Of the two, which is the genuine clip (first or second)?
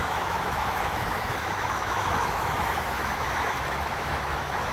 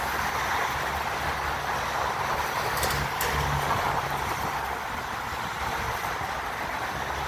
second